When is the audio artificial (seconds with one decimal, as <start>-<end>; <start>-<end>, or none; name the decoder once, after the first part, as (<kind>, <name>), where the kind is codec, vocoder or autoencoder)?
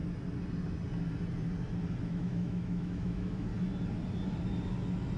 2.0-3.5 (autoencoder, DAC-VAE)